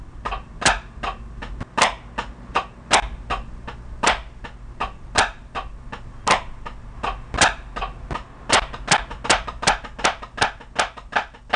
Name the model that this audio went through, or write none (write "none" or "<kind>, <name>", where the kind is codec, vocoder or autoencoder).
none